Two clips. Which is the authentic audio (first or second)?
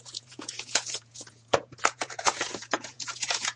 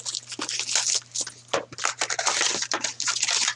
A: second